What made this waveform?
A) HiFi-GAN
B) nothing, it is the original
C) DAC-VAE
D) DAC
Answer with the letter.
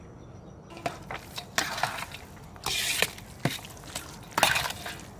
B